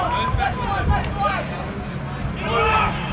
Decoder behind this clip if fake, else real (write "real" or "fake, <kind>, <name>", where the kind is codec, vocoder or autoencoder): real